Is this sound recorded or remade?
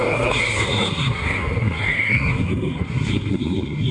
remade